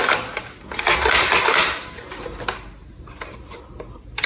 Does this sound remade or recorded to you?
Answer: recorded